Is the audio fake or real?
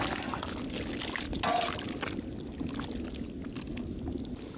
real